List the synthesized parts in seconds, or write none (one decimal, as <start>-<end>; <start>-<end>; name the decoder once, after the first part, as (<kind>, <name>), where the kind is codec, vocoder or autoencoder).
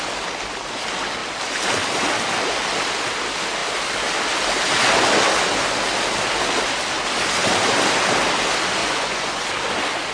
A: 8.8-9.5 (vocoder, Vocos)